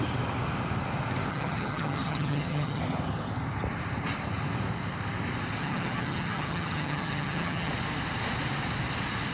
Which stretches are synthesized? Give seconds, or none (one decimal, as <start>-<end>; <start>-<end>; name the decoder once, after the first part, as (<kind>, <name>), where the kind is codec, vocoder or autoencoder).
1.3-2.8 (vocoder, HiFi-GAN); 5.6-7.7

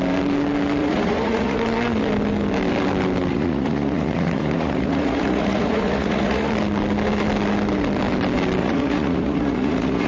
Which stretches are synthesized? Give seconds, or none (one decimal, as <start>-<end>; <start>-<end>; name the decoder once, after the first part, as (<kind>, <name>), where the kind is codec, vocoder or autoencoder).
0.8-1.6 (vocoder, Vocos); 3.3-6.5; 8.6-10.1

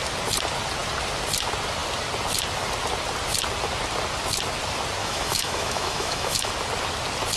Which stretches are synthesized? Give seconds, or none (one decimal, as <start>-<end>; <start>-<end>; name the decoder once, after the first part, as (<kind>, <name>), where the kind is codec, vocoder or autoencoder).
5.0-6.5 (autoencoder, DAC-VAE)

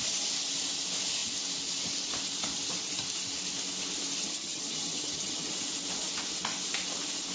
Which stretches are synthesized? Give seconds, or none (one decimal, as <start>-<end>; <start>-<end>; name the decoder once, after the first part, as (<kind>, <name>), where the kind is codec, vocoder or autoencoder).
4.2-5.5 (vocoder, HiFi-GAN)

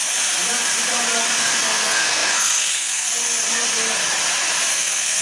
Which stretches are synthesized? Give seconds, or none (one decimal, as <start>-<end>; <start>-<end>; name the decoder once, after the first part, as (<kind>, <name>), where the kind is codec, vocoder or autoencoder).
1.4-3.1 (codec, SNAC); 4.7-5.2

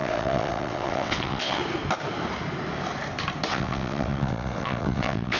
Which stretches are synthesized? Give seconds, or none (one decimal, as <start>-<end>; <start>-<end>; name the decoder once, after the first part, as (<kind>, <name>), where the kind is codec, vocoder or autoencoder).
0.0-1.6 (vocoder, WaveNeXt); 3.5-5.4

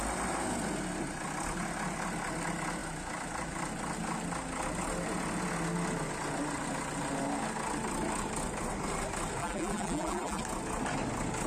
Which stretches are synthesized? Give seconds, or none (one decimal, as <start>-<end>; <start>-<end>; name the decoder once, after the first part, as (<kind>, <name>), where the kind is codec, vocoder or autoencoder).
9.4-10.4 (vocoder, BigVGAN v2)